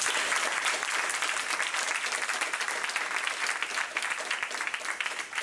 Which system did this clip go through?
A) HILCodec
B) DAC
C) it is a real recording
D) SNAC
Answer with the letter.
C